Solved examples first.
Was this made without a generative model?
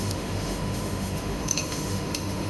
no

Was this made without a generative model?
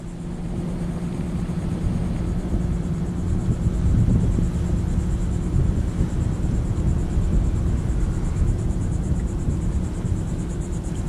yes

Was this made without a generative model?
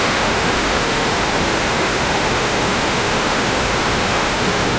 no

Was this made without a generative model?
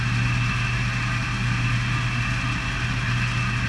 yes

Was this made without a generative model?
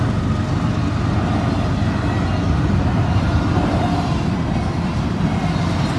yes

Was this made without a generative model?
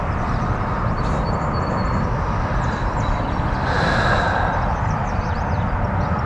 yes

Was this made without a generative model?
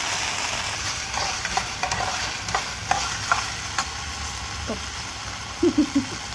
yes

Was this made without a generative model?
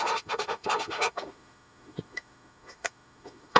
no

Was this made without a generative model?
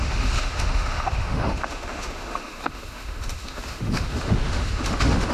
no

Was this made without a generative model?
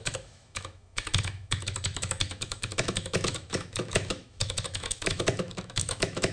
no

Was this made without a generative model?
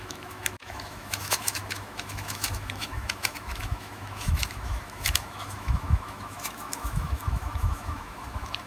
no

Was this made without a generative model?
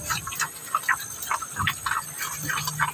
yes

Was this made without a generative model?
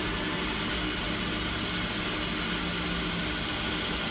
yes